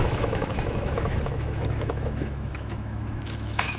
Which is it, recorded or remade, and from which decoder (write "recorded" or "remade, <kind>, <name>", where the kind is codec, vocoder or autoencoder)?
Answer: remade, autoencoder, DAC-VAE